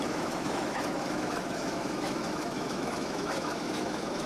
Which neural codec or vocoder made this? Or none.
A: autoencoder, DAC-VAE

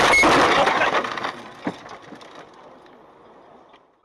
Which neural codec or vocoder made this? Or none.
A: none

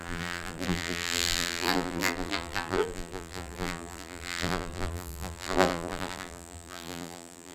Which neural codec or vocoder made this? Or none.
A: vocoder, BigVGAN v2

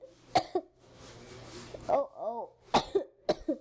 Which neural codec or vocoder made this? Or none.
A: none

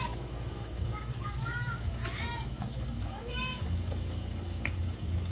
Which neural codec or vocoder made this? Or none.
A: codec, DAC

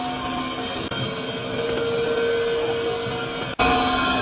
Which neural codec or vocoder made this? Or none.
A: none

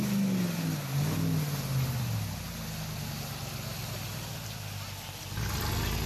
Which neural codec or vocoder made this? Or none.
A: none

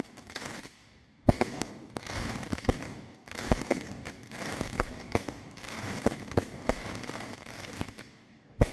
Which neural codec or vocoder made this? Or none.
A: codec, DAC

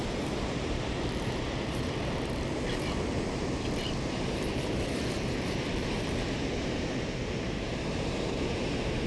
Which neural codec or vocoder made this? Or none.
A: vocoder, BigVGAN v2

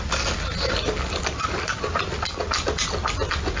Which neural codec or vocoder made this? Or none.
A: none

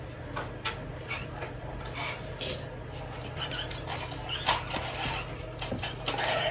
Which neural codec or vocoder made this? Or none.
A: none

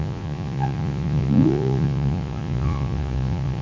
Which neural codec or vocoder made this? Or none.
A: vocoder, Vocos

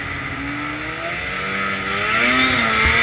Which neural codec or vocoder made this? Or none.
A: none